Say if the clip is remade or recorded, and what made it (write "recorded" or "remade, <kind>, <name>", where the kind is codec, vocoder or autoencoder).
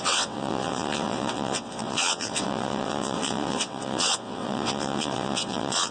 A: remade, vocoder, WaveNeXt